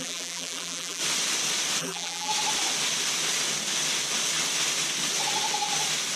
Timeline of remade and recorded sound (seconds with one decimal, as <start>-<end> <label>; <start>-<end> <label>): 0.0-1.0 remade; 1.0-1.8 recorded; 1.8-2.3 remade; 2.3-6.2 recorded